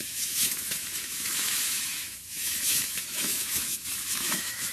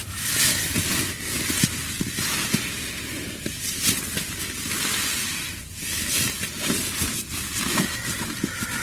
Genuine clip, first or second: second